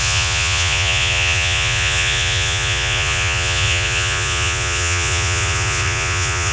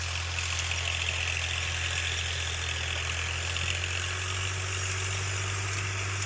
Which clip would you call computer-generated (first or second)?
first